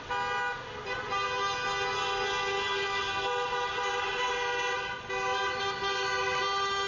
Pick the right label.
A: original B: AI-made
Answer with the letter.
A